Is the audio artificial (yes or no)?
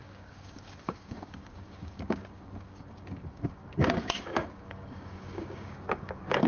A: yes